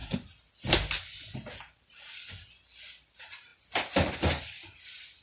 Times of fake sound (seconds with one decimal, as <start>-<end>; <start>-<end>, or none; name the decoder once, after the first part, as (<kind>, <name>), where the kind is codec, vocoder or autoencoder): none